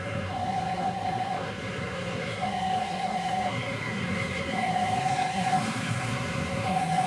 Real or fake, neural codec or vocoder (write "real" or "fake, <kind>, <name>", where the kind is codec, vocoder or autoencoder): fake, codec, SNAC